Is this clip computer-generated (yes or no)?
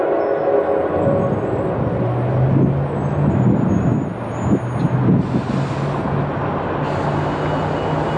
no